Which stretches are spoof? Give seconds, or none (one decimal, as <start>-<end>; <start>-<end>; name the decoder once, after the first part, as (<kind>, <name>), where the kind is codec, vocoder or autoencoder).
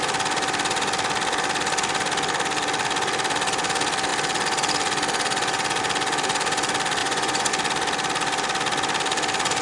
7.0-7.5 (vocoder, Vocos)